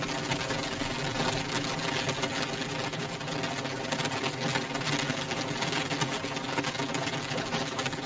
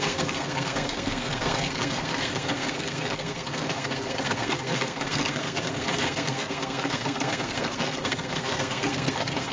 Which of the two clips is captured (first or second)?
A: first